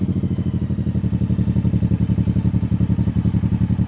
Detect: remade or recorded recorded